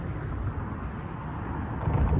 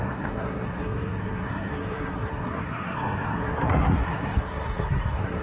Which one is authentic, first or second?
first